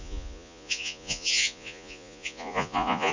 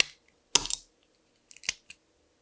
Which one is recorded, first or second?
second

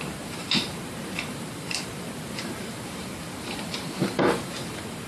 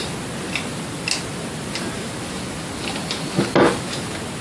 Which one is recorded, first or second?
second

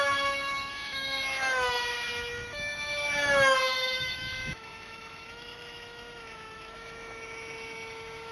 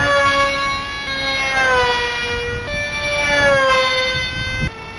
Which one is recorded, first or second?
second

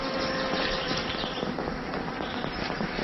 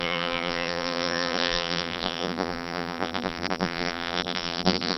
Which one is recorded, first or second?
first